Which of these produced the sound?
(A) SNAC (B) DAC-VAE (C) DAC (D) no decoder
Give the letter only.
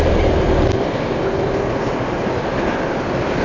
D